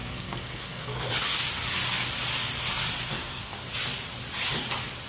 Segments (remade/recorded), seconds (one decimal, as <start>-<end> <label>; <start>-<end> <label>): 0.0-1.1 remade; 1.1-3.1 recorded; 3.1-3.7 remade; 3.7-5.1 recorded